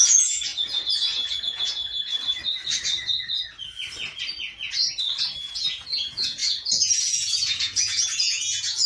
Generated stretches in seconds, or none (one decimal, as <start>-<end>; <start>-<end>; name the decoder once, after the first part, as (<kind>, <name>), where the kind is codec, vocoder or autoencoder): 0.0-1.8 (vocoder, Vocos); 5.4-8.9